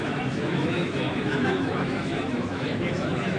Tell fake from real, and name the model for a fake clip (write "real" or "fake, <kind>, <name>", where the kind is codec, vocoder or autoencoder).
fake, autoencoder, DAC-VAE